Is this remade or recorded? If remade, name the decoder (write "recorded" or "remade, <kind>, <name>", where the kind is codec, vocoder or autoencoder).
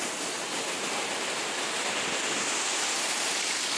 recorded